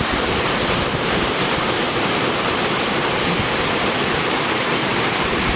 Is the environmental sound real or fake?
fake